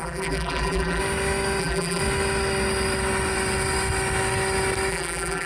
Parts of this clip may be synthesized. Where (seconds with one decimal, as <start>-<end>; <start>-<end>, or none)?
0.0-1.0; 1.6-2.0; 4.9-5.5